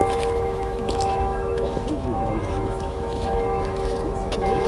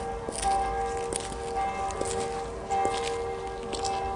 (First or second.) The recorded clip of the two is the second